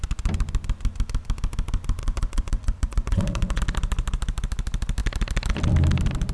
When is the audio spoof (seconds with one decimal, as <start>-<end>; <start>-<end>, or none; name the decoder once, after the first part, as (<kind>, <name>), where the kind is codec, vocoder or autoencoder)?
2.0-3.6 (vocoder, WaveNeXt)